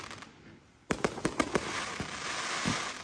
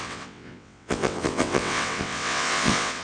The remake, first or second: second